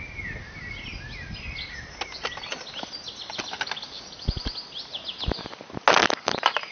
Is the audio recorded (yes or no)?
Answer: yes